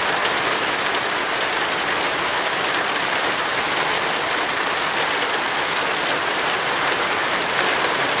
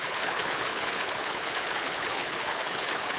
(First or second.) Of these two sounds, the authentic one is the first